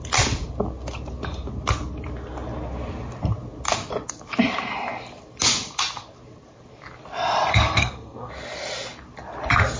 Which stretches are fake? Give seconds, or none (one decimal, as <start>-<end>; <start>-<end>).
7.5-8.3